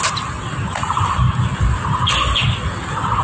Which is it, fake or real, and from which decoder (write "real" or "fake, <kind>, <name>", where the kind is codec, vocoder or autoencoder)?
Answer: real